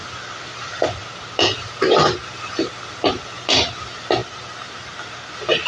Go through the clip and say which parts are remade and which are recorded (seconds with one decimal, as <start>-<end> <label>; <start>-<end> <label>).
0.0-2.7 remade; 2.7-5.7 recorded